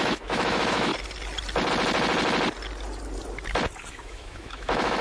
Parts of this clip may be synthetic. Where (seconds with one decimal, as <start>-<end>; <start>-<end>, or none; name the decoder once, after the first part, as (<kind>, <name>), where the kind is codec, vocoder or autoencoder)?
0.0-0.9 (autoencoder, DAC-VAE); 3.9-5.0